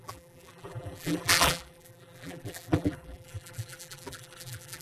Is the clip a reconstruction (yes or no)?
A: yes